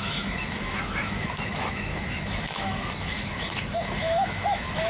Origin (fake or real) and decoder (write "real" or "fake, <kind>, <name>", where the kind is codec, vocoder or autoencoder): fake, autoencoder, DAC-VAE